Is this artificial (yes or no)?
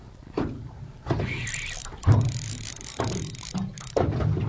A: no